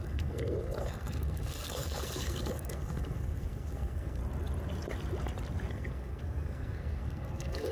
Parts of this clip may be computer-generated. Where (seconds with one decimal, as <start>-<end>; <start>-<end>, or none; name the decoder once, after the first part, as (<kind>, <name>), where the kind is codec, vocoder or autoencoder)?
0.0-4.2 (codec, SNAC); 5.7-7.7